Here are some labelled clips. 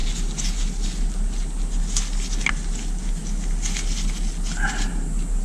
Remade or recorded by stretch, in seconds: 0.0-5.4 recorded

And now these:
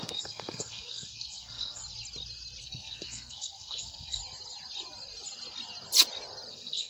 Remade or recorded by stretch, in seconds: 0.0-1.8 remade; 1.8-2.6 recorded; 2.6-4.2 remade; 4.2-6.5 recorded; 6.5-6.9 remade

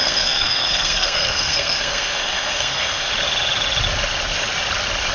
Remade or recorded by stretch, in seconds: 0.0-3.1 remade; 3.1-5.1 recorded

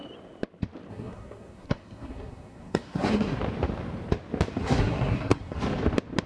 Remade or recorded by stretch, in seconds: 0.0-0.9 recorded; 0.9-3.4 remade; 3.4-4.6 recorded; 4.6-5.6 remade; 5.6-6.3 recorded